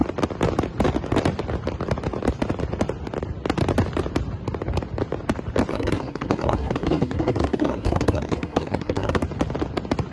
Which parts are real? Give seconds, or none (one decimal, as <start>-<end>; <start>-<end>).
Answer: 0.0-5.7; 9.2-10.1